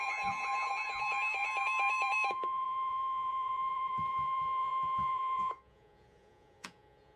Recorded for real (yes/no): no